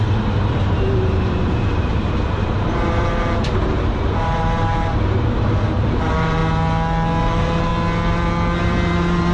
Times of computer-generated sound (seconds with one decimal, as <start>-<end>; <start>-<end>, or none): 0.0-6.4; 7.2-7.7; 8.6-9.3